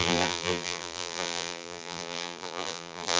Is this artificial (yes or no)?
yes